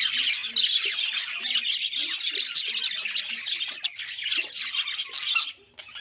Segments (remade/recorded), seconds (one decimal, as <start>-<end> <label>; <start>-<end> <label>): 0.0-6.0 recorded